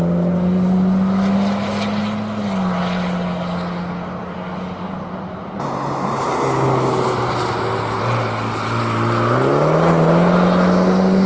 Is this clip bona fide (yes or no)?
yes